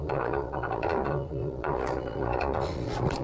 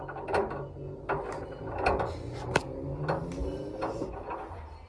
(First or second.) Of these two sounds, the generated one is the first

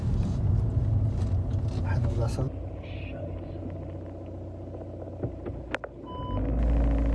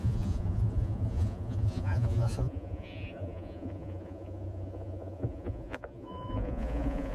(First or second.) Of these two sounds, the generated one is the second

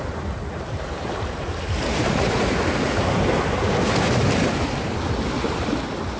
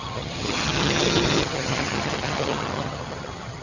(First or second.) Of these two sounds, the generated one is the second